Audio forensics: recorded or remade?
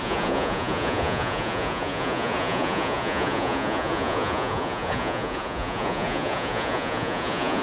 remade